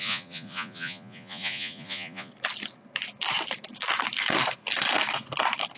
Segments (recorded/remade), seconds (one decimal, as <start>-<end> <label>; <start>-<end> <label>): 0.0-2.3 remade; 2.3-5.8 recorded